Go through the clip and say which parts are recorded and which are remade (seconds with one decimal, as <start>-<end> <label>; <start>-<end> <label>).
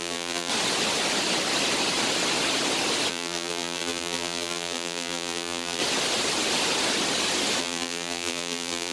0.0-0.5 remade; 0.5-3.1 recorded; 3.1-5.8 remade; 5.8-7.6 recorded; 7.6-8.9 remade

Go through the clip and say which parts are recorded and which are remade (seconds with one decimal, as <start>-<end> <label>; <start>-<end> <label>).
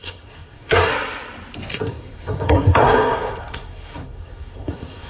0.0-0.9 remade; 0.9-1.7 recorded; 1.7-5.1 remade